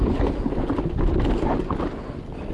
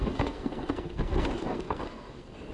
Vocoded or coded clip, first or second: second